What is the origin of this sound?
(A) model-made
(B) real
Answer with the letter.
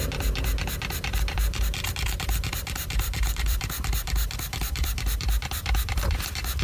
A